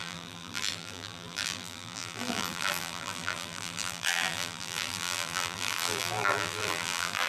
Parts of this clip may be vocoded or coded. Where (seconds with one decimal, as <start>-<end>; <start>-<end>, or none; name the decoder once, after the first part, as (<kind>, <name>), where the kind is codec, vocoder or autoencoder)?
0.0-7.3 (vocoder, BigVGAN v2)